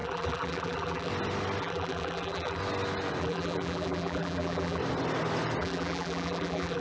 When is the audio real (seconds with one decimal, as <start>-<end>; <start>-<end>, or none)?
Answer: 1.1-1.6; 2.6-3.2; 4.8-5.6